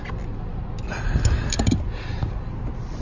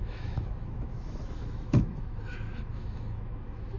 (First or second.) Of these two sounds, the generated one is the second